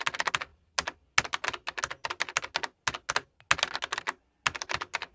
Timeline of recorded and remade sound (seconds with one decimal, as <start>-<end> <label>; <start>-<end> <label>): 0.0-5.1 recorded